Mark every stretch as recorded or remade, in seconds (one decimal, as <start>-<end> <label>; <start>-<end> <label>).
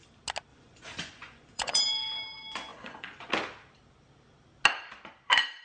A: 0.0-0.5 recorded; 0.5-1.8 remade; 1.8-2.7 recorded; 2.7-3.3 remade; 3.3-5.6 recorded